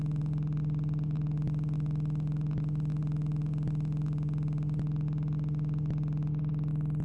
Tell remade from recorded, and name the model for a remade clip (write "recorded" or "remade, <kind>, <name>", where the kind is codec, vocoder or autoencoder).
recorded